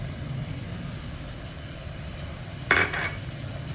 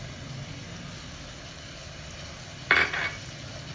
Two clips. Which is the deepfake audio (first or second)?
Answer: first